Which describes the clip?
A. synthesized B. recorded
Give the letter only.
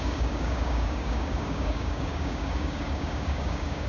A